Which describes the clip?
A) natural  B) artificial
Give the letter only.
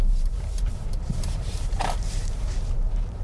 B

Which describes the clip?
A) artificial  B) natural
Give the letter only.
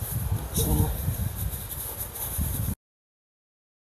B